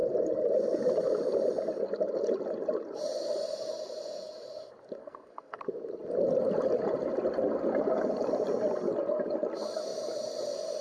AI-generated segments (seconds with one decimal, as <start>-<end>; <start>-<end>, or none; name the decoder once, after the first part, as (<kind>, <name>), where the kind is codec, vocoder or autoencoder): 5.0-5.6 (codec, SNAC)